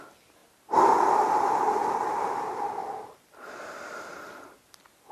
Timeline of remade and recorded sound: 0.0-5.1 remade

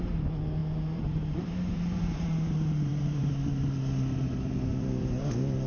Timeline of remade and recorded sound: 0.0-0.6 recorded; 0.6-3.3 remade; 3.3-5.7 recorded

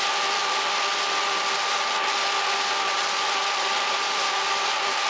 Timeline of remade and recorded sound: 0.0-5.1 recorded

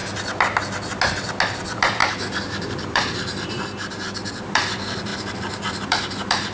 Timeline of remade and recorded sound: 0.0-1.6 recorded; 1.6-2.0 remade; 2.0-2.8 recorded; 2.8-6.5 remade

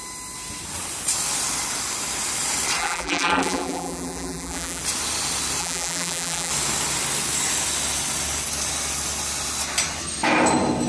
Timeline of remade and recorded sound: 0.0-2.8 recorded; 2.8-4.8 remade; 4.8-5.6 recorded; 5.6-6.5 remade; 6.5-10.9 recorded

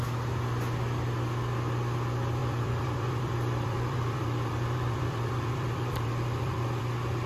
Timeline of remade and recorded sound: 0.0-2.4 recorded; 2.4-6.8 remade; 6.8-7.3 recorded

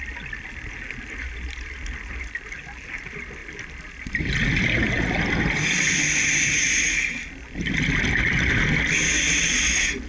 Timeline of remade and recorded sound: 0.0-10.1 recorded